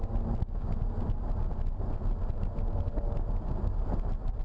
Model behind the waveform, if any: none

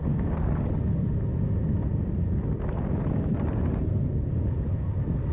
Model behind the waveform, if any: none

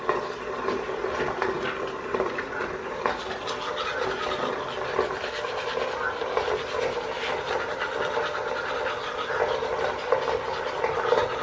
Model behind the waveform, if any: none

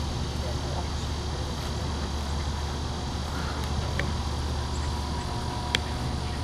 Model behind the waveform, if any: none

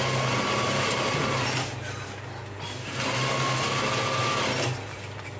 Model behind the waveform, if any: none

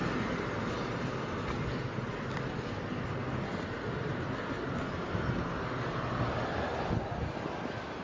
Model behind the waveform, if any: none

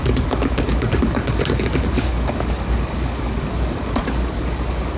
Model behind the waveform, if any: codec, DAC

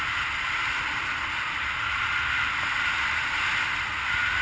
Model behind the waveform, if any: none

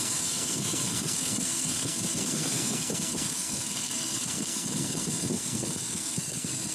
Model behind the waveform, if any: codec, SNAC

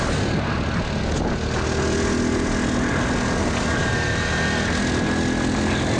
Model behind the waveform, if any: none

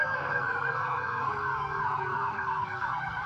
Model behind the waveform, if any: codec, SNAC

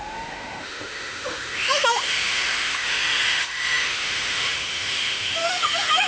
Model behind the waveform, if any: autoencoder, DAC-VAE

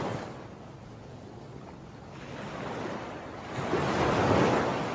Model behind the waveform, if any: none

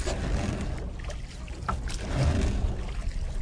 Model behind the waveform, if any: none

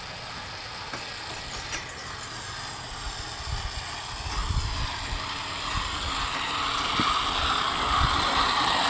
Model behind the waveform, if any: none